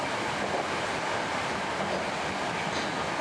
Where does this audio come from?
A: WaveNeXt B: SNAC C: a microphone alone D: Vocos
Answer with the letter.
C